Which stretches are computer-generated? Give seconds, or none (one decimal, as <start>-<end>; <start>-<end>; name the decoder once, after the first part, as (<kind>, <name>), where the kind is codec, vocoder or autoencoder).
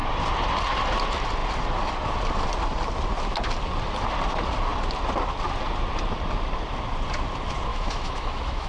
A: 7.7-8.7 (autoencoder, DAC-VAE)